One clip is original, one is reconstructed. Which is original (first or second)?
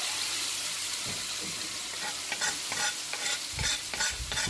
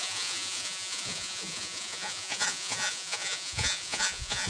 first